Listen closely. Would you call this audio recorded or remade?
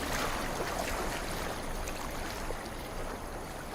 recorded